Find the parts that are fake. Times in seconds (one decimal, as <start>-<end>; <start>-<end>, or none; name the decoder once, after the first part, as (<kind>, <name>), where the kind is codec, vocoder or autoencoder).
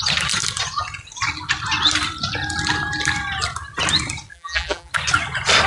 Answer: 4.3-4.9 (vocoder, BigVGAN v2)